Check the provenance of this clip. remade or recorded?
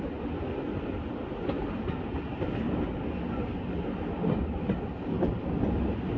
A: recorded